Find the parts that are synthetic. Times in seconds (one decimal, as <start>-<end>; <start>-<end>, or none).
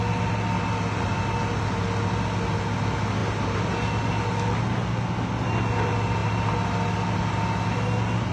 none